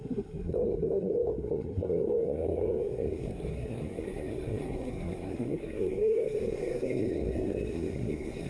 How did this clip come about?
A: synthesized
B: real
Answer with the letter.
A